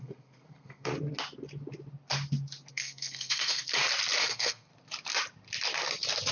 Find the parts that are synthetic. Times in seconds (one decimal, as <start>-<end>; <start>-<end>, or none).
0.0-0.9; 2.7-3.6; 4.2-4.7